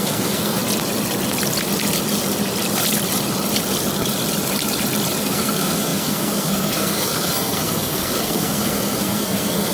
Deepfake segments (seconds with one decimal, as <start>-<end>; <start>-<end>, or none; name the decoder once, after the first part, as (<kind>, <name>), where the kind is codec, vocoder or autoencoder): 0.0-0.6 (codec, SNAC); 5.2-9.7